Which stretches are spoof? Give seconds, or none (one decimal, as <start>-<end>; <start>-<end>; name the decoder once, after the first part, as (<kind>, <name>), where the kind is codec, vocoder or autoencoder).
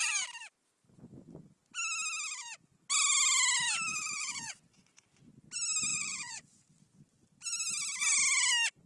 3.9-5.3 (vocoder, Vocos); 5.9-6.6